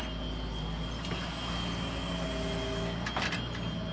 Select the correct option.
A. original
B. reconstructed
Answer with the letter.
A